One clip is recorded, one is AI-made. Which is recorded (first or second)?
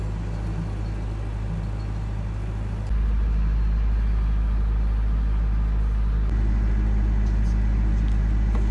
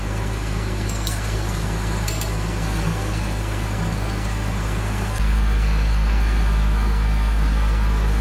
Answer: first